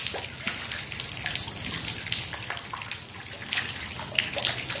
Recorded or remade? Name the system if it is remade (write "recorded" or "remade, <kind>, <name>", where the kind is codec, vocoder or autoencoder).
recorded